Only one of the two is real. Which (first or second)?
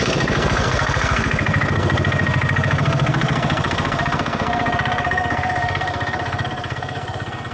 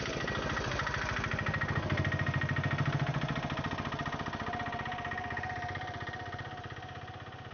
second